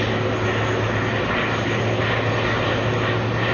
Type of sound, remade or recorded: recorded